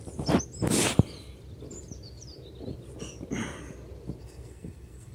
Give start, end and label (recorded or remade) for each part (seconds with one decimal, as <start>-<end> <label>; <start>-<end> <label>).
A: 0.0-4.2 recorded; 4.2-5.1 remade